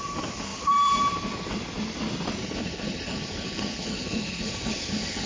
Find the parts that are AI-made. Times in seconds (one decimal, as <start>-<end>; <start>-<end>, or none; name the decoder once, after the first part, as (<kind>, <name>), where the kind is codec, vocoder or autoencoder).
2.4-5.3 (codec, HILCodec)